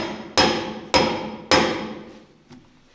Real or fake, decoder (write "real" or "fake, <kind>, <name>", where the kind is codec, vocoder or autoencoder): real